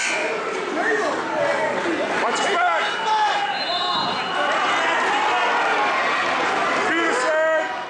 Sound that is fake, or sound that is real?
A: real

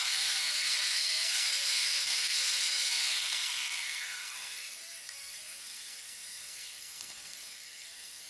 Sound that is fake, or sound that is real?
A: fake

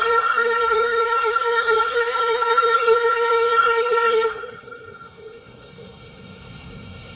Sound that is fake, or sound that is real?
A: fake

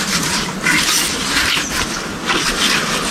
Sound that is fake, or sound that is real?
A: real